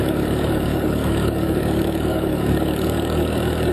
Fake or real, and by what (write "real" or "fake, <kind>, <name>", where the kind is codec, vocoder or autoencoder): fake, codec, DAC